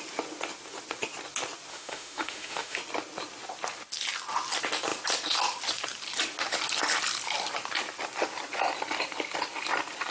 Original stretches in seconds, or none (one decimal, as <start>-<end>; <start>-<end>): 0.0-1.7; 2.8-10.1